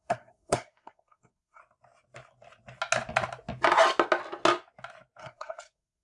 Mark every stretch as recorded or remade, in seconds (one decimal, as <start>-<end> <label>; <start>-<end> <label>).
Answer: 0.0-1.6 remade; 1.6-5.2 recorded; 5.2-6.0 remade